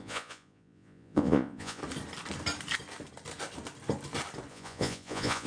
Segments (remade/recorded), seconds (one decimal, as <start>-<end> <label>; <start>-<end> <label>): 0.0-1.8 remade; 1.8-4.5 recorded; 4.5-5.5 remade